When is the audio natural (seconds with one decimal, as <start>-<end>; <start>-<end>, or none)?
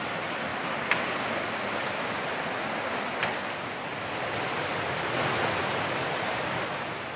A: 0.0-7.2